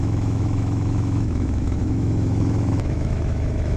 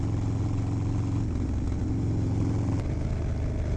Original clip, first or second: second